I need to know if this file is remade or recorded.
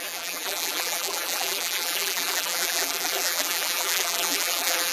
remade